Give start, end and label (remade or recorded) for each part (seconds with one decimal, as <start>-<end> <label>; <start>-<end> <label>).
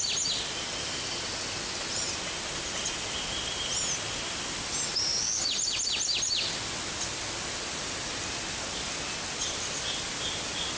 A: 0.0-10.8 recorded